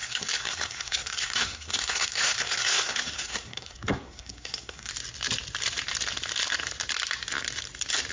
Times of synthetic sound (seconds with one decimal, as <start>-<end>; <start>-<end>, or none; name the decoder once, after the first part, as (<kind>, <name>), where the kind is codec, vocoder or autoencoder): 0.0-4.9 (codec, SNAC)